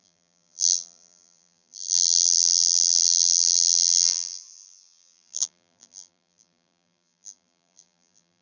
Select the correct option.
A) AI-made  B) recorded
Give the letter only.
A